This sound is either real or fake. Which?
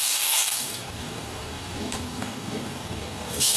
fake